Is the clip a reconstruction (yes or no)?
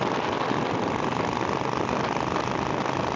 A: no